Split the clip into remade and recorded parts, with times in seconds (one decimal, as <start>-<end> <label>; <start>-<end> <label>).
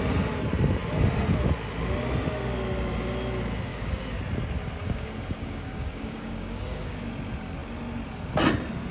0.0-3.7 recorded; 3.7-4.2 remade; 4.2-4.8 recorded; 4.8-7.1 remade; 7.1-8.9 recorded